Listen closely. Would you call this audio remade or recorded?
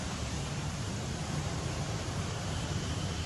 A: remade